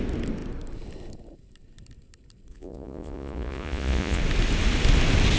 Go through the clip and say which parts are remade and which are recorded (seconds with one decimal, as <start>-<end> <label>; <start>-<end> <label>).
0.0-2.5 recorded; 2.5-4.2 remade; 4.2-5.4 recorded